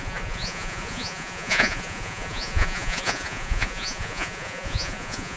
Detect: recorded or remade remade